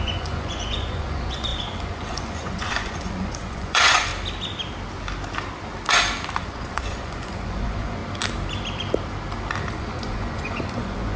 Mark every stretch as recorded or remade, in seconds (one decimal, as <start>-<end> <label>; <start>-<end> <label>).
0.0-4.1 remade; 4.1-6.4 recorded; 6.4-8.0 remade; 8.0-9.7 recorded; 9.7-11.2 remade